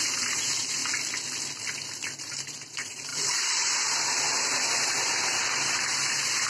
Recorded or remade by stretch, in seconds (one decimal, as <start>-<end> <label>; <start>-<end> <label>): 0.0-0.8 remade; 0.8-2.2 recorded; 2.2-6.5 remade